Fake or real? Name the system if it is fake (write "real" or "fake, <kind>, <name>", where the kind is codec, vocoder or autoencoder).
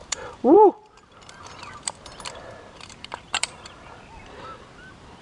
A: fake, vocoder, BigVGAN v2